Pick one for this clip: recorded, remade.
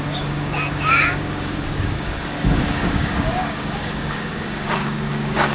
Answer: remade